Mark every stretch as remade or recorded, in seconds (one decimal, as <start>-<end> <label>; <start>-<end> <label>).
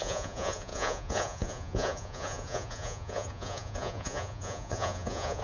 0.0-5.4 remade